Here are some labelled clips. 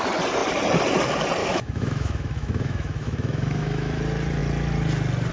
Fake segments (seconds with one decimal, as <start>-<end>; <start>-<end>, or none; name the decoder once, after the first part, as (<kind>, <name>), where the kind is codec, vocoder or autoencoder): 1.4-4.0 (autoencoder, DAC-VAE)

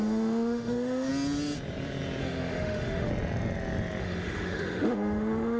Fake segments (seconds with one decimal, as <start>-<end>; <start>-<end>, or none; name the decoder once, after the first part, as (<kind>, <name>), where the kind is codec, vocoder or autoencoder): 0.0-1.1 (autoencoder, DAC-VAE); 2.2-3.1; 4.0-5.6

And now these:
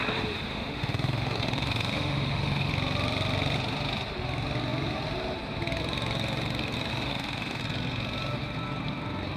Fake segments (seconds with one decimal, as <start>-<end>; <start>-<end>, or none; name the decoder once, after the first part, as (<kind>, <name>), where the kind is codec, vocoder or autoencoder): 0.5-2.7 (autoencoder, DAC-VAE); 6.9-7.6

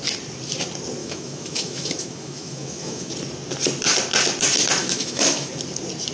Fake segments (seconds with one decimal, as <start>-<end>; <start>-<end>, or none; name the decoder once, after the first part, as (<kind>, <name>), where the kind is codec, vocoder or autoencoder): 1.0-3.1 (autoencoder, DAC-VAE); 4.8-5.5

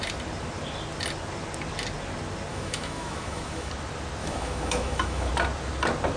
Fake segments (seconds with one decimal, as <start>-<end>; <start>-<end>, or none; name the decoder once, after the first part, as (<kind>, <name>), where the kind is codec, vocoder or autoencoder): 2.5-3.7 (autoencoder, DAC-VAE); 4.2-5.3

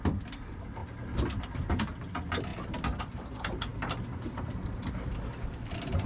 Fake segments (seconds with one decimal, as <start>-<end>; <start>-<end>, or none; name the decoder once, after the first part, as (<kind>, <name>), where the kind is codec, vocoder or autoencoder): none